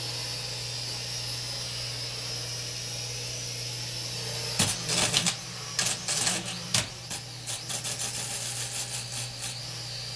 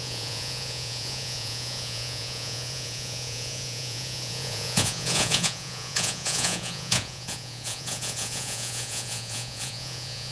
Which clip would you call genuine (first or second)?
first